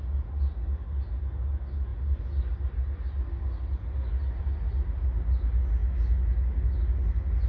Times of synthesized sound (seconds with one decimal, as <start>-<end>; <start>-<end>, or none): none